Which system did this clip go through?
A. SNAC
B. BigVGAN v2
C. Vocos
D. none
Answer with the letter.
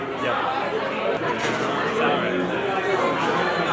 D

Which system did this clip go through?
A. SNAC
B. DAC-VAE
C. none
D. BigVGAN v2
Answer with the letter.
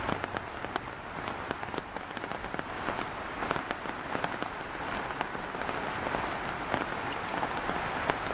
C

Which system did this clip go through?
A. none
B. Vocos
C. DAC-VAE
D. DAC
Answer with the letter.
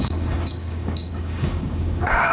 D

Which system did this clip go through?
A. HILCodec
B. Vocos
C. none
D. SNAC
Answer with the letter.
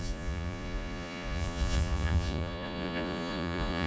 B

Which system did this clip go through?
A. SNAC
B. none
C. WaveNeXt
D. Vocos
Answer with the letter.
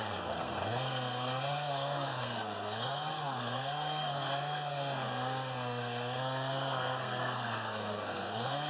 A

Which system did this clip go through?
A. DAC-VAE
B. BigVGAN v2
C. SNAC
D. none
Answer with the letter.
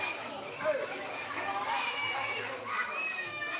A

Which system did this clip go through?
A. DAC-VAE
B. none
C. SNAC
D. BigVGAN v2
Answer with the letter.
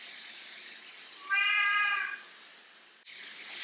B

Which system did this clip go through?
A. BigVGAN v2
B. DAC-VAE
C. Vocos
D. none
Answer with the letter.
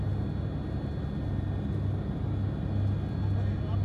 D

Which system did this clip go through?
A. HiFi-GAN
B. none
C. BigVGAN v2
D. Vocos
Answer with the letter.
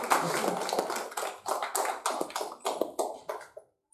B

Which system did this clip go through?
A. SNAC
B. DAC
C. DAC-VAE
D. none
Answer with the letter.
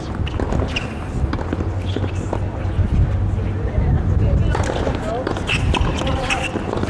D